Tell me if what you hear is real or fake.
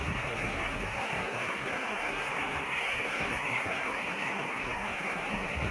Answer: fake